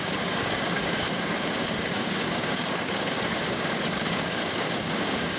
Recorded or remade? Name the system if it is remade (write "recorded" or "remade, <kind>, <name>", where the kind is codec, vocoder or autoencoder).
remade, codec, DAC